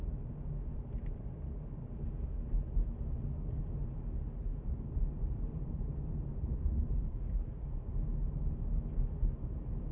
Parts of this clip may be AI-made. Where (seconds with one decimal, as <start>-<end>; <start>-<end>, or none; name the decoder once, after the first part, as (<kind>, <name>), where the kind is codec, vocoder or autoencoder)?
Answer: 0.7-2.2 (vocoder, BigVGAN v2); 4.4-7.9